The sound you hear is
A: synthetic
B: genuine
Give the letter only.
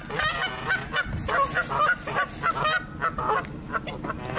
B